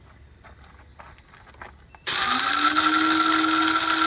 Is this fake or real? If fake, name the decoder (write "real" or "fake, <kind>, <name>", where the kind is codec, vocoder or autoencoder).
real